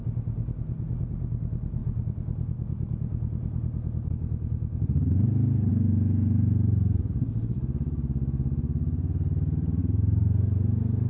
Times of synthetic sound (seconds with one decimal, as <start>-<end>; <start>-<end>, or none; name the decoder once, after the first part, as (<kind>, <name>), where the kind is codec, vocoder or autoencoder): none